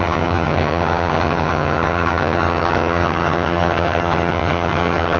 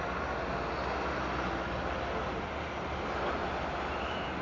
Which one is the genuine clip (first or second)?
second